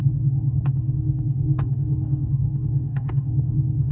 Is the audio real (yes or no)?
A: no